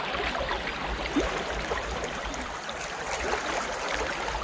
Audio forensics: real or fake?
real